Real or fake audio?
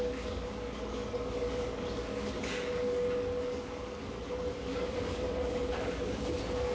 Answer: fake